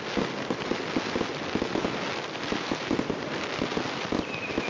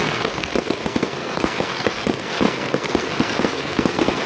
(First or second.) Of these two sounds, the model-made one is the second